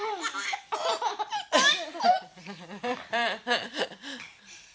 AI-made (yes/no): yes